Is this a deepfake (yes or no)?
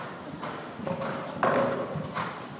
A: no